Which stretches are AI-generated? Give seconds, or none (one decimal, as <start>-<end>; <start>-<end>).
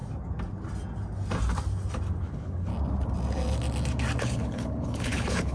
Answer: 2.2-2.7; 4.2-5.5